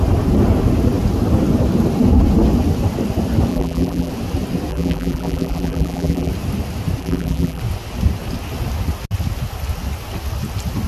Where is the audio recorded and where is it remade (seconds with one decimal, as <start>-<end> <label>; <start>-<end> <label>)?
0.0-3.5 recorded; 3.5-4.1 remade; 4.1-4.7 recorded; 4.7-6.3 remade; 6.3-7.0 recorded; 7.0-7.6 remade; 7.6-10.9 recorded